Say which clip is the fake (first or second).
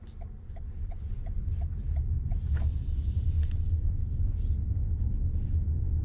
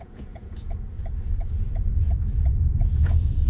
second